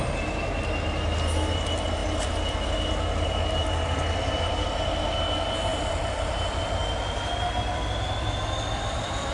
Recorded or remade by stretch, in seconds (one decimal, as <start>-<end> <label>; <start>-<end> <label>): 0.0-2.0 recorded; 2.0-4.3 remade; 4.3-5.7 recorded; 5.7-9.3 remade